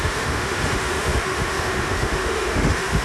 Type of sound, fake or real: fake